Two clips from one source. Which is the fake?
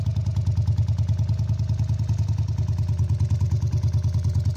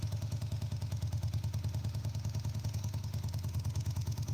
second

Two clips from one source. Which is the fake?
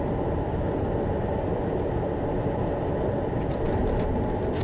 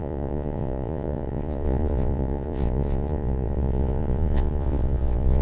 second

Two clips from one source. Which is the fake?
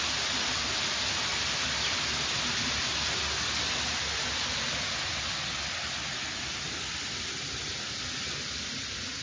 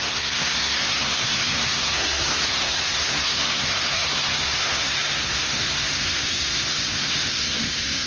second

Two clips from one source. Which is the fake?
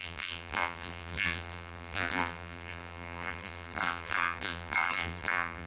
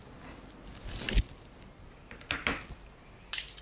first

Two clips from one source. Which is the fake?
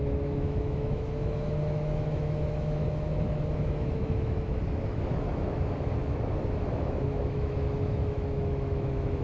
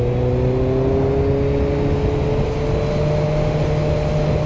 first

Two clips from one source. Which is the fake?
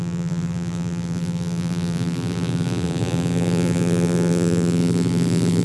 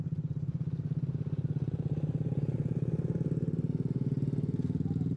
first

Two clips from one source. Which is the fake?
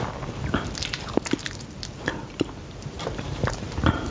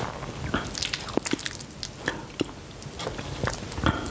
first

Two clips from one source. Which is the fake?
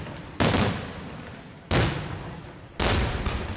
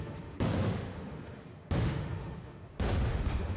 second